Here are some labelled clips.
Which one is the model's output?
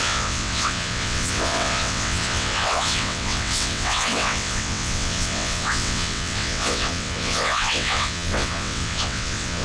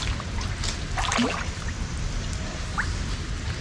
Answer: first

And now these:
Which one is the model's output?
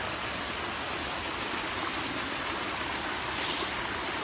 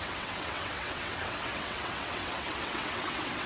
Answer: second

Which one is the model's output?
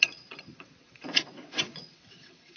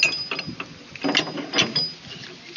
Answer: first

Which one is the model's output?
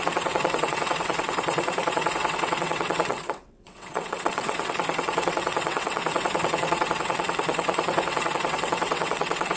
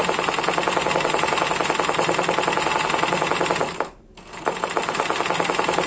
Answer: first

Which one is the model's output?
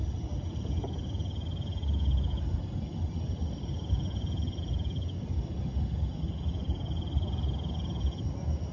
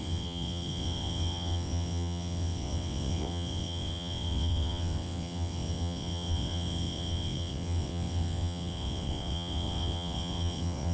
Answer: second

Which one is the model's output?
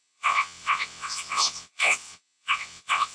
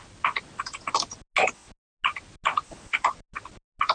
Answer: first